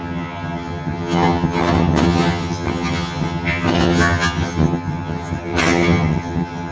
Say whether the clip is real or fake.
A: fake